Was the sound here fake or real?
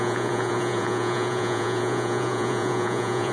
fake